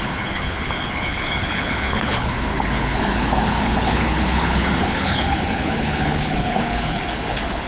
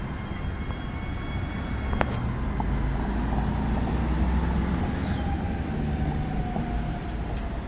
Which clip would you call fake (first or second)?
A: first